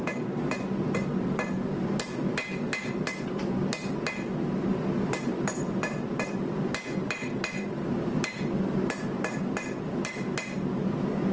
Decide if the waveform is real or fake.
real